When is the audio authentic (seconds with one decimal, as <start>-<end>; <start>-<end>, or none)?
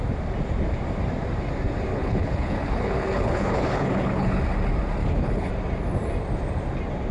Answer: 0.0-1.9; 4.3-5.0; 5.5-7.1